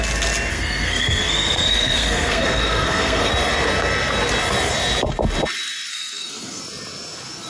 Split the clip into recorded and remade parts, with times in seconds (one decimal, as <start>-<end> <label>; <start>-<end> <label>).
0.0-0.5 recorded; 0.5-3.3 remade; 3.3-5.9 recorded; 5.9-6.6 remade; 6.6-7.5 recorded